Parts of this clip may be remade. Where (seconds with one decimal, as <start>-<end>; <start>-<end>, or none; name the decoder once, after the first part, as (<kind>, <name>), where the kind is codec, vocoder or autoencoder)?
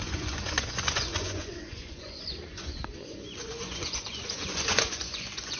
0.0-5.6 (vocoder, Vocos)